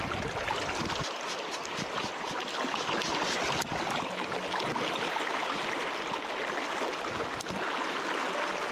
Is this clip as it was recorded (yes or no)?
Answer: yes